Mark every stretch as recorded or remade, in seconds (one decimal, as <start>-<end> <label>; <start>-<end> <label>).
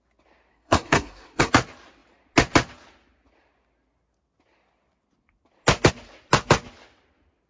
0.0-0.5 recorded; 0.5-1.5 remade; 1.5-7.5 recorded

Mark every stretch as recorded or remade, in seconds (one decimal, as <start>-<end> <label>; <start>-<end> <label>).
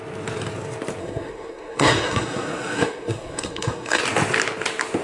0.0-1.0 recorded; 1.0-4.0 remade; 4.0-5.0 recorded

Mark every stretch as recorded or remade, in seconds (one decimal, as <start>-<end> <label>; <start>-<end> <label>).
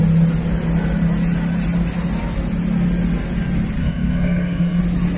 0.0-3.8 recorded; 3.8-4.8 remade; 4.8-5.2 recorded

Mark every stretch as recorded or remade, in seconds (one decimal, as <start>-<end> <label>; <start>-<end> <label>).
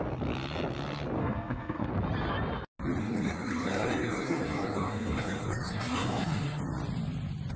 0.0-1.2 recorded; 1.2-1.9 remade; 1.9-3.0 recorded; 3.0-6.6 remade; 6.6-7.6 recorded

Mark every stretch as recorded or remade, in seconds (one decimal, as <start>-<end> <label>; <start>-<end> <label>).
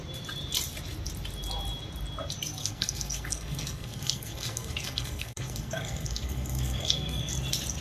0.0-2.6 recorded; 2.6-7.3 remade; 7.3-7.8 recorded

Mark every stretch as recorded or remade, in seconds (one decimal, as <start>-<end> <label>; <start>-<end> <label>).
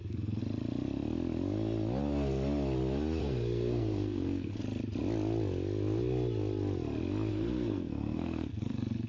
0.0-0.4 remade; 0.4-3.2 recorded; 3.2-4.6 remade; 4.6-7.3 recorded; 7.3-9.1 remade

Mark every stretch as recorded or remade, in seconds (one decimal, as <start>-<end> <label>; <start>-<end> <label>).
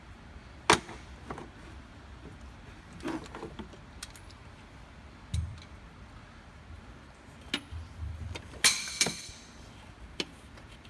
0.0-8.8 recorded; 8.8-9.3 remade; 9.3-10.9 recorded